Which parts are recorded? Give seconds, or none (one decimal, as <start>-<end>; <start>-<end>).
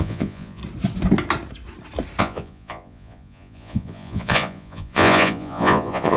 0.6-2.2